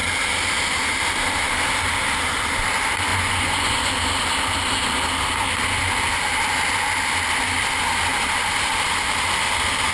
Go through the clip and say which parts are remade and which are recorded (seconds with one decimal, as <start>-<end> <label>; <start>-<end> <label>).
0.0-3.1 recorded; 3.1-3.9 remade; 3.9-9.9 recorded